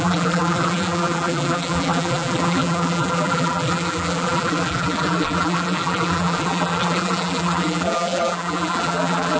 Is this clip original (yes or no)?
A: no